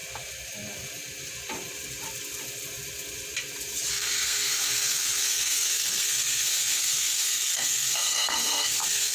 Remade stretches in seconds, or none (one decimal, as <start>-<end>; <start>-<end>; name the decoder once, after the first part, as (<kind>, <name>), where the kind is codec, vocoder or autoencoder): 3.9-9.1 (codec, SNAC)